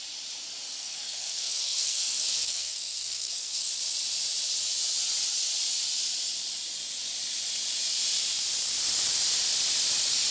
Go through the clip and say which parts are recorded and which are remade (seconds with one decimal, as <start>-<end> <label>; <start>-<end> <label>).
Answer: 0.0-0.8 recorded; 0.8-3.7 remade; 3.7-10.3 recorded